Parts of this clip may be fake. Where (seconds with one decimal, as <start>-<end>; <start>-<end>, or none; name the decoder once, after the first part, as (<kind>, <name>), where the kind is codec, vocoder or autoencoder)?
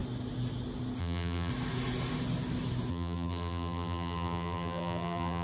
1.0-1.5 (vocoder, BigVGAN v2); 2.9-5.4